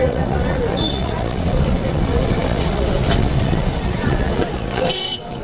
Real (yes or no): no